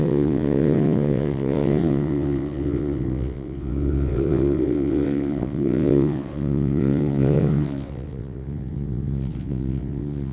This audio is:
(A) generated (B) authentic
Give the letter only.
A